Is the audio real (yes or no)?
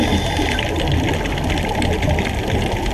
yes